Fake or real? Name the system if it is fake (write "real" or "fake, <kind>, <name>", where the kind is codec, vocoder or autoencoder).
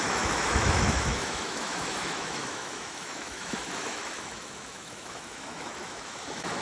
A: fake, autoencoder, DAC-VAE